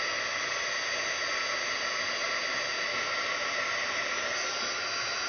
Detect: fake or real real